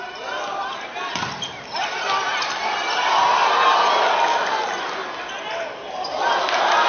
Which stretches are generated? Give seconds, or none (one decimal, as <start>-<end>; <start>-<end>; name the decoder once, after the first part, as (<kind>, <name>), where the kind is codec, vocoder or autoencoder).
none